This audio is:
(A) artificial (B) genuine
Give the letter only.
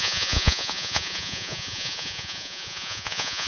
A